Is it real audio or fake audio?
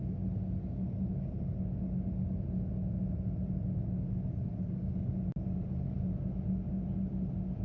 real